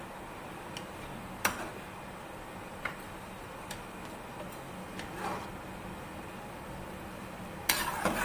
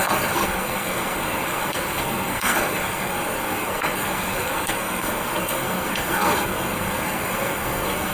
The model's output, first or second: second